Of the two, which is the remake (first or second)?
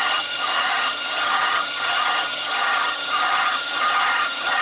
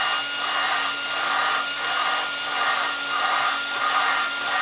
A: first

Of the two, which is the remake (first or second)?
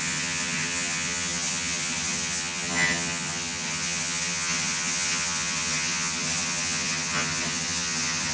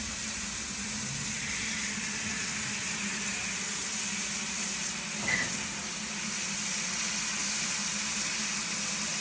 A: first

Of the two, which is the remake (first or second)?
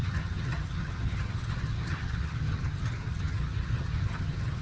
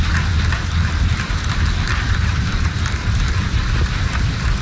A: first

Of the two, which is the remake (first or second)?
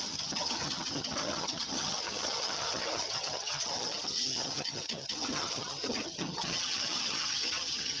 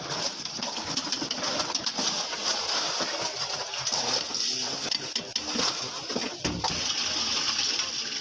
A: first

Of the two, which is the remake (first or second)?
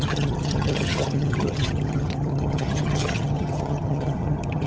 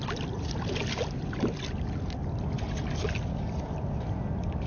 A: first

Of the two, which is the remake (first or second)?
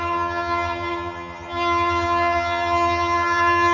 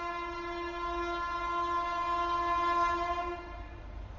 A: first